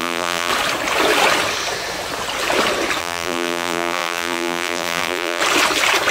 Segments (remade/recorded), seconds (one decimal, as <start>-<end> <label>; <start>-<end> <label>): 0.0-0.5 remade; 0.5-3.0 recorded; 3.0-5.4 remade; 5.4-6.1 recorded